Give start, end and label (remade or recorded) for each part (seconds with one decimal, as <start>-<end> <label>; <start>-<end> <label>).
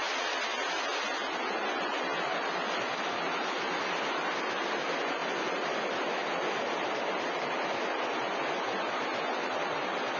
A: 0.0-10.2 recorded